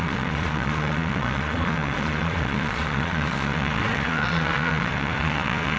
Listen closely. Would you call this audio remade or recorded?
remade